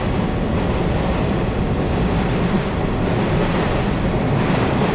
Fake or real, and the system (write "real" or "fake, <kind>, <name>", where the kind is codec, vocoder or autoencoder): real